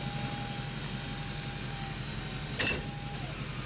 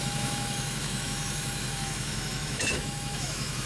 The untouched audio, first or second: first